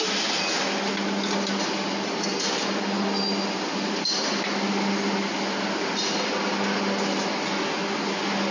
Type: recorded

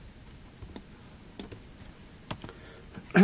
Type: recorded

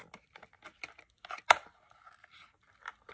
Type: recorded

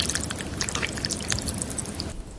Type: remade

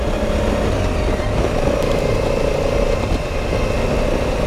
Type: recorded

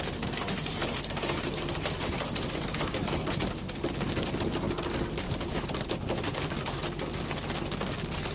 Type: recorded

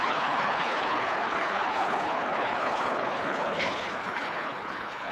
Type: remade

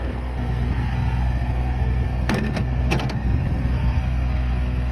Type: remade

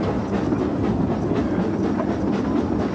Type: recorded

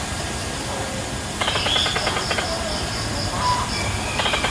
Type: recorded